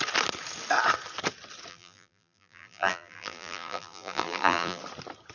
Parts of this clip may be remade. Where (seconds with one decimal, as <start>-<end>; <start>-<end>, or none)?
1.7-4.8